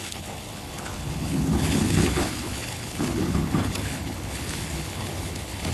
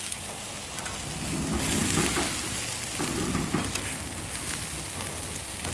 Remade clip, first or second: first